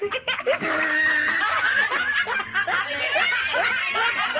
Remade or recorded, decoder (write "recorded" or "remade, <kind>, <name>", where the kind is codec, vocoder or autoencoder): recorded